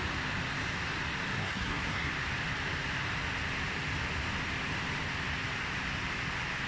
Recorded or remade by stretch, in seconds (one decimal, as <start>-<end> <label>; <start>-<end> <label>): 0.0-1.4 recorded; 1.4-2.1 remade; 2.1-6.7 recorded